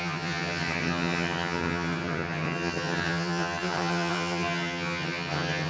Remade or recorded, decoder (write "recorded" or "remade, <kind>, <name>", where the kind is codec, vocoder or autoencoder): remade, vocoder, HiFi-GAN